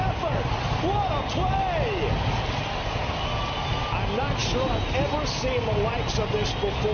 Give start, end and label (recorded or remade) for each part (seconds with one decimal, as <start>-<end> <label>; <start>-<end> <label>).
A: 0.0-6.9 recorded